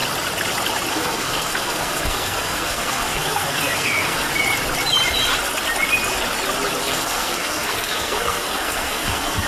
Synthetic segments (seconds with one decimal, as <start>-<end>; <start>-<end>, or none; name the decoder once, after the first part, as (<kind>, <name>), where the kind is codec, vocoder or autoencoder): 0.9-4.3 (codec, SNAC); 6.8-9.5